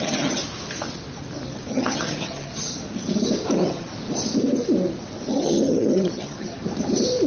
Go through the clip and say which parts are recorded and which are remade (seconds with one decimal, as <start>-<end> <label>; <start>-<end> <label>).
0.0-0.4 remade; 0.4-1.7 recorded; 1.7-2.5 remade; 2.5-3.5 recorded; 3.5-3.9 remade; 3.9-5.3 recorded; 5.3-6.5 remade; 6.5-7.3 recorded